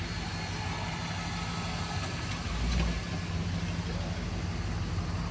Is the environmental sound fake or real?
real